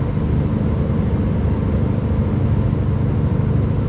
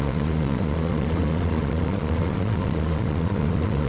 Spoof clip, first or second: second